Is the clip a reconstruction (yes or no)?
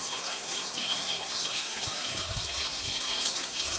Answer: yes